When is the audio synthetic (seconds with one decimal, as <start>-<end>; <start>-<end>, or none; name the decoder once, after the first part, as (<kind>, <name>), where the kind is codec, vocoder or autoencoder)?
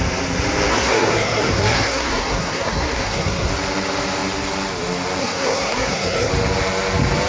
0.7-3.5 (codec, SNAC); 5.2-6.3